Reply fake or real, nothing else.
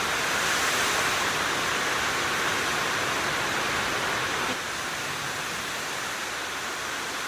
real